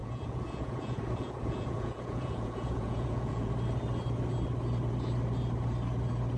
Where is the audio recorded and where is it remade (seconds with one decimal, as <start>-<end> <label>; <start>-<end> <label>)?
0.0-3.5 remade; 3.5-6.4 recorded